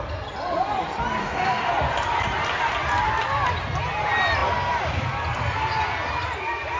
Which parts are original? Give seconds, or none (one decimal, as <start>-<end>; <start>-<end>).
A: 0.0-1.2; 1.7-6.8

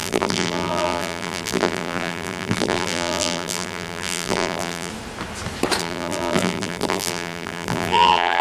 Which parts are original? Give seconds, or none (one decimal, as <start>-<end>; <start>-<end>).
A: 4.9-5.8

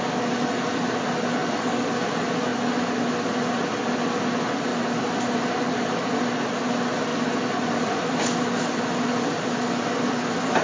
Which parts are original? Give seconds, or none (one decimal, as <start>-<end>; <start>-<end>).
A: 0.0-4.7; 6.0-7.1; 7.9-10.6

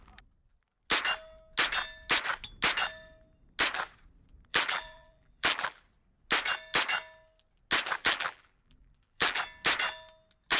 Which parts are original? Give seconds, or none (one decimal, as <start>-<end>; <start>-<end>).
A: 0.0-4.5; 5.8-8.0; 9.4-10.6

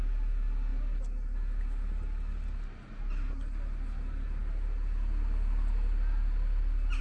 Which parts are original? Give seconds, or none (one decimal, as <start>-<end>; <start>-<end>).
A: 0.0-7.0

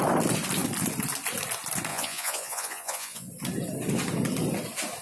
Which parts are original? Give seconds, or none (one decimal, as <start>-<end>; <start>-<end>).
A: 0.0-1.9; 3.3-5.0

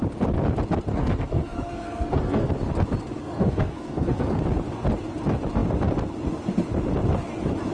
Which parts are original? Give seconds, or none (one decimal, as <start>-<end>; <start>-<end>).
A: 0.0-0.9; 2.5-3.2; 4.4-7.7

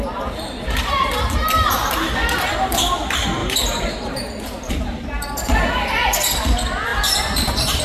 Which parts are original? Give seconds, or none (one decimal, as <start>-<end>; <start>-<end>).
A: 0.0-6.9